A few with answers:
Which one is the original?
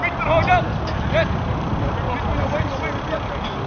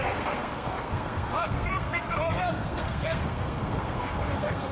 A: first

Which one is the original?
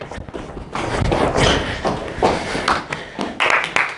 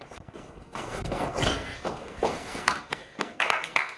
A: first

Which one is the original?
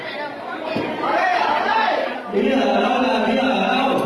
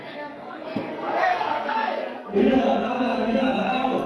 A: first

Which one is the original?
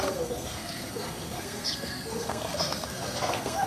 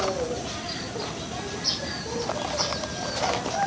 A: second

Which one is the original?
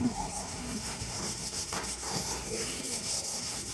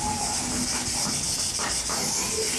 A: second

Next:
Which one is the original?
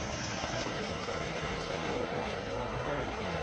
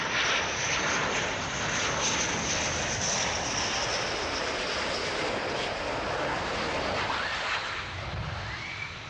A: second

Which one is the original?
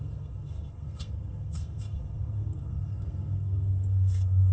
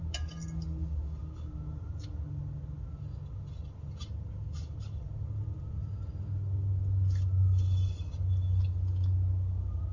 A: second